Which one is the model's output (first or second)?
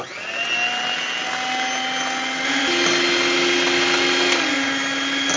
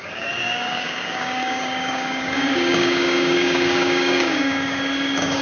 second